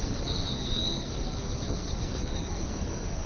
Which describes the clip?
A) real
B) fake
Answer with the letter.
B